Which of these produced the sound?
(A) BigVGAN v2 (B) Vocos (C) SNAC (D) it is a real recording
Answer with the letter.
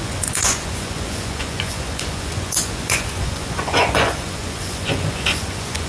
B